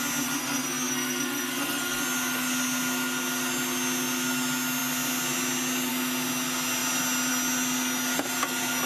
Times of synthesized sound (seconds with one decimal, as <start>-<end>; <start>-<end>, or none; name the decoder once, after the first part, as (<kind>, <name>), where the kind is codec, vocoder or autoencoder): 0.4-2.0 (codec, SNAC)